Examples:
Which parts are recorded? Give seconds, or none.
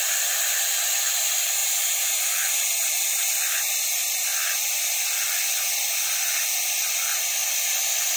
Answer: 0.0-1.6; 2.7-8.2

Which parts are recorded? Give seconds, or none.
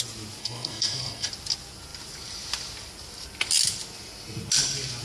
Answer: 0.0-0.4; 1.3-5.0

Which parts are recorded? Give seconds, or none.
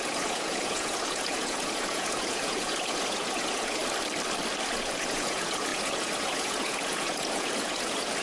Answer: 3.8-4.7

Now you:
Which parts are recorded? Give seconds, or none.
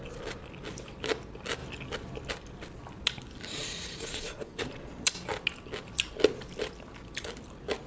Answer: 0.0-3.6; 4.6-7.9